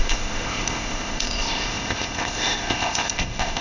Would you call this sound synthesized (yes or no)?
yes